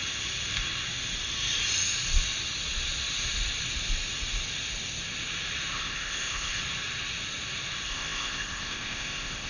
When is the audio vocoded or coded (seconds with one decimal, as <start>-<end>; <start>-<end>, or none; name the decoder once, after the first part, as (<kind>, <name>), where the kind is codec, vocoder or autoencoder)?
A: 5.7-6.6 (codec, ZipCodec); 7.9-9.5